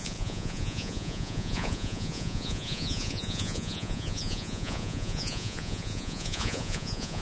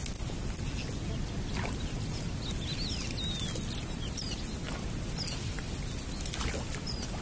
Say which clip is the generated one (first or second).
first